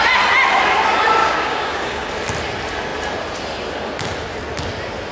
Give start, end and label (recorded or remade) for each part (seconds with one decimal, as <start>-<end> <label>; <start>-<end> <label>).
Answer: 0.0-1.2 recorded; 1.2-2.1 remade; 2.1-5.1 recorded